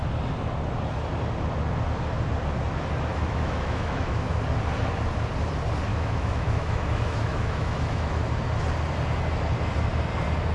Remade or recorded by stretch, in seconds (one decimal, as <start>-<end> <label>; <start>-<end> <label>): 0.0-3.1 recorded; 3.1-4.4 remade; 4.4-5.9 recorded; 5.9-8.3 remade; 8.3-10.5 recorded